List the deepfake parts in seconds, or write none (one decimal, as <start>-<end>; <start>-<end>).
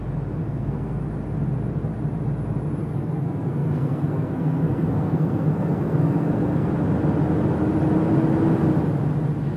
0.4-1.0; 2.8-6.7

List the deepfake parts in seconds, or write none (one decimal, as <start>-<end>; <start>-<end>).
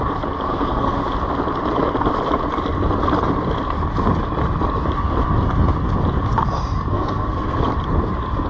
0.5-1.0; 6.9-7.6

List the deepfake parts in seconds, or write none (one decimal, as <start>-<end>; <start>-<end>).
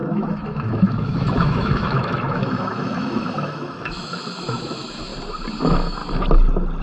0.0-5.1; 5.6-6.0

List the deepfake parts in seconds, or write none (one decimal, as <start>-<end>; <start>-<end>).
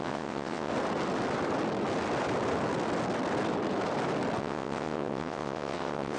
0.0-0.7; 4.4-6.2